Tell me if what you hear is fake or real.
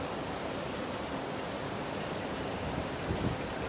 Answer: real